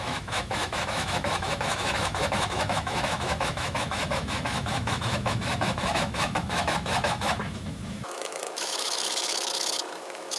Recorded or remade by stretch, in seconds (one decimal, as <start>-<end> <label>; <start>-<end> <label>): 0.0-10.4 remade